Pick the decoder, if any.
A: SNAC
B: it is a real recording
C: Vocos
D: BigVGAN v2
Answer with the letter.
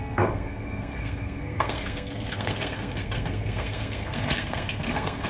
A